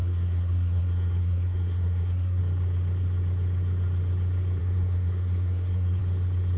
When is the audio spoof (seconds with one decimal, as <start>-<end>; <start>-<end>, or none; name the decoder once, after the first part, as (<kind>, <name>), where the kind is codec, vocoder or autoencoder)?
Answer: 0.0-2.4 (codec, SNAC); 4.6-6.0